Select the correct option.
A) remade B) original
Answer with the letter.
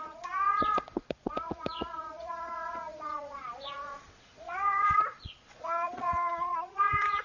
A